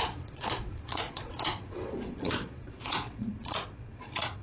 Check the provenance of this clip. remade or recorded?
remade